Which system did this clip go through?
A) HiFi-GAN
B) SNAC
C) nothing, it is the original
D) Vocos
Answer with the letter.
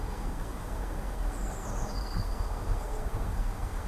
B